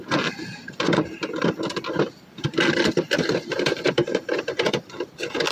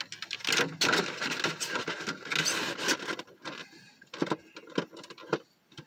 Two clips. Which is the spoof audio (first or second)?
first